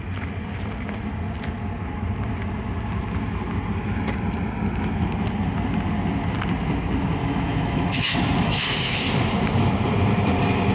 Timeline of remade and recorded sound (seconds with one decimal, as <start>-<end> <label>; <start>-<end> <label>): 0.0-7.2 recorded; 7.2-8.6 remade; 8.6-10.7 recorded